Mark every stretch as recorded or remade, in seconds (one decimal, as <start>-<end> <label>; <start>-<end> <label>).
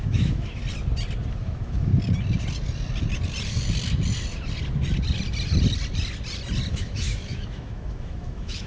0.0-0.6 remade; 0.6-1.3 recorded; 1.3-1.9 remade; 1.9-6.7 recorded; 6.7-8.7 remade